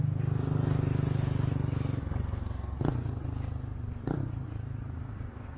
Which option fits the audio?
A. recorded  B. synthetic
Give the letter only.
A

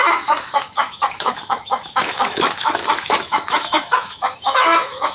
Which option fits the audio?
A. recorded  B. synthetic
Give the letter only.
B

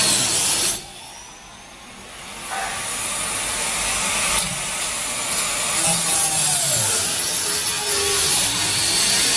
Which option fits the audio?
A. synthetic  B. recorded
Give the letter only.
B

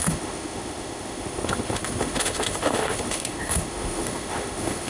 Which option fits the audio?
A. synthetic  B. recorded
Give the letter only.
A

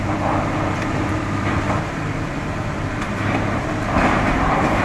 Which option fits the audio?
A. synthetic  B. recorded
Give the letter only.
A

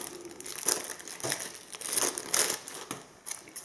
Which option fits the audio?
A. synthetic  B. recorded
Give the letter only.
B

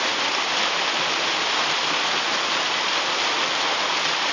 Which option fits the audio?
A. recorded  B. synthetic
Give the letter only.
A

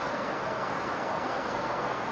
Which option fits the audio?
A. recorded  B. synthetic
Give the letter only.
B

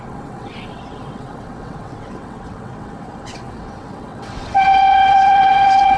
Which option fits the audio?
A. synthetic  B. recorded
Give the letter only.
A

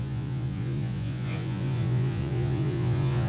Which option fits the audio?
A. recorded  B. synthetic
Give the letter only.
B